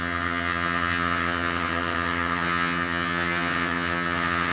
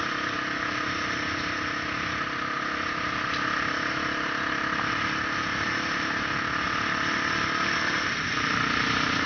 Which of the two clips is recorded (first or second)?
second